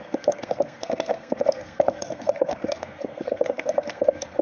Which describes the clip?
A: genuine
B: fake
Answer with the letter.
B